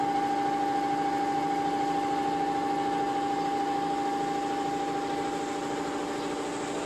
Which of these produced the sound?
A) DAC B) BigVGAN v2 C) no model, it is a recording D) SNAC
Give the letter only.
C